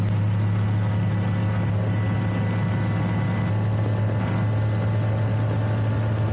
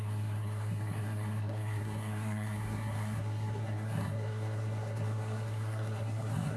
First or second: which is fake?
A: second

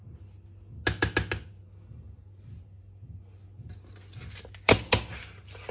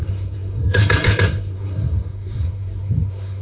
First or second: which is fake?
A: second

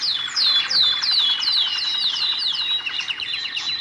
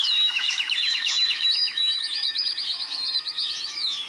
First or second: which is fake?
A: second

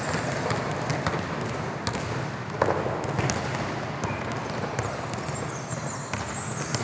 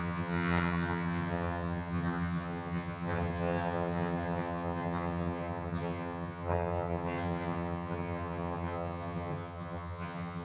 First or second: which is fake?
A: second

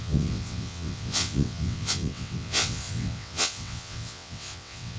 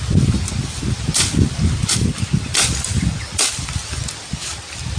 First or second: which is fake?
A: first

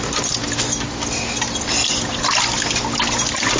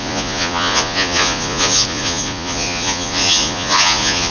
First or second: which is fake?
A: second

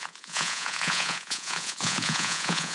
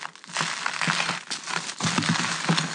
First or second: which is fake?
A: first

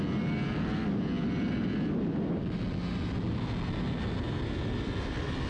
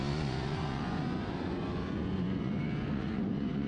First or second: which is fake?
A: second